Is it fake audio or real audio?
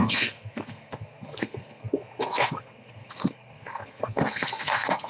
fake